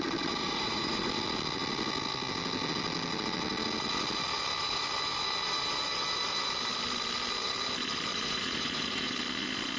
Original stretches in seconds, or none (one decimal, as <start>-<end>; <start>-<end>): 0.0-0.4; 1.1-8.1; 9.1-9.8